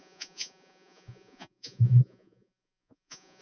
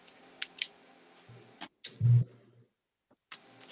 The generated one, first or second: first